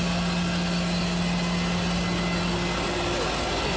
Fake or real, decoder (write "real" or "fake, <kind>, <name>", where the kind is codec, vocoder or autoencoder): real